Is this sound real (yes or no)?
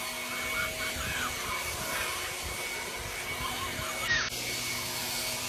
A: yes